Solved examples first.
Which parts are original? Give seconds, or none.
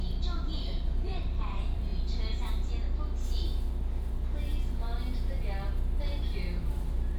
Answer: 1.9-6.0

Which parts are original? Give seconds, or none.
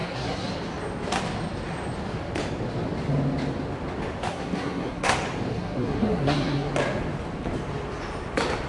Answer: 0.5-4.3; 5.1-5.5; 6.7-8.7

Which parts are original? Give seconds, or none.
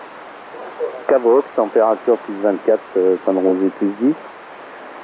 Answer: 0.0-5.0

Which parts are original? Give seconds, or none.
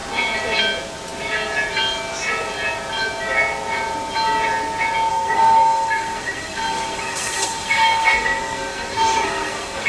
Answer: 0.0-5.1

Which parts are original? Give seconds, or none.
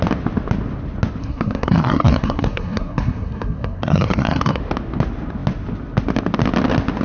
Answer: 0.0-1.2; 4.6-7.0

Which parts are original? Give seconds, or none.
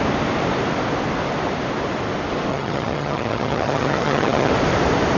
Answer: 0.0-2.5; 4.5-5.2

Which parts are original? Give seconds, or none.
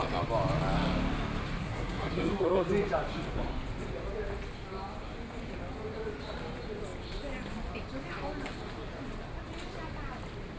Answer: 0.0-1.6; 2.7-10.6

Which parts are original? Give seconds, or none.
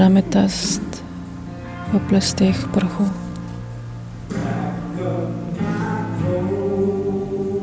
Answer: 0.0-2.6; 3.6-4.4; 5.0-7.6